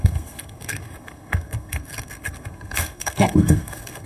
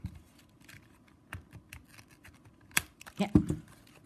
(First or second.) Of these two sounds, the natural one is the second